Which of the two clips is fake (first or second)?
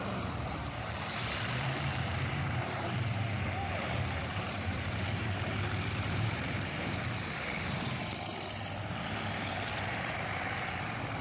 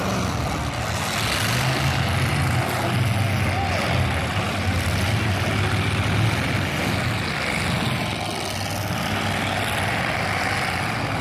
first